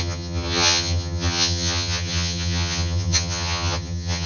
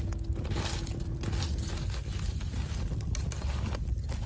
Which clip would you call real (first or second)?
second